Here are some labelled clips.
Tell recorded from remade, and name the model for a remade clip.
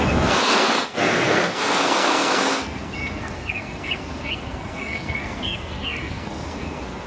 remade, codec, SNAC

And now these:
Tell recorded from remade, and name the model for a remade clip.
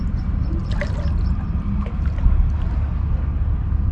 recorded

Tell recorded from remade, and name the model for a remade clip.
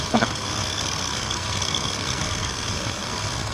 remade, codec, SNAC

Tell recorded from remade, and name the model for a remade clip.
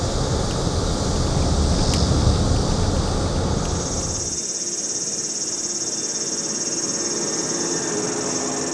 recorded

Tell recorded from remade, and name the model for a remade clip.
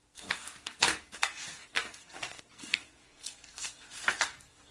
remade, codec, SNAC